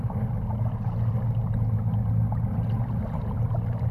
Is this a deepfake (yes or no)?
no